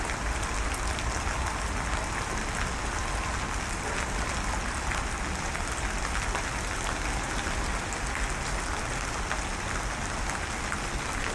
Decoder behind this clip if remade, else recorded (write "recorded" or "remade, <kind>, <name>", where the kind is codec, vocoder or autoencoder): recorded